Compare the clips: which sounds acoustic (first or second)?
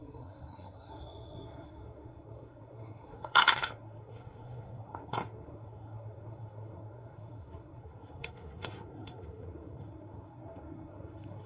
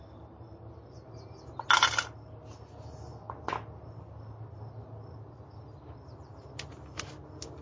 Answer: second